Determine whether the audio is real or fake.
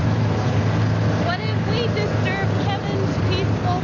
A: real